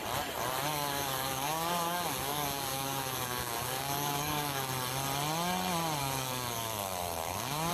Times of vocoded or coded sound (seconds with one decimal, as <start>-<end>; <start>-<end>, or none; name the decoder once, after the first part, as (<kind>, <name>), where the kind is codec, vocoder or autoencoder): 0.7-4.7 (codec, DAC); 6.0-7.7

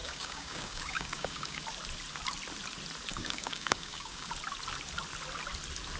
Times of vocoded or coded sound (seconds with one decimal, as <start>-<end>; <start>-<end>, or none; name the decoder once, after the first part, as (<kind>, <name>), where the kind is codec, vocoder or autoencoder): 0.0-1.6 (codec, DAC); 3.1-4.3